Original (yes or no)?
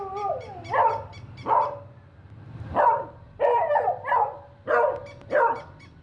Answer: yes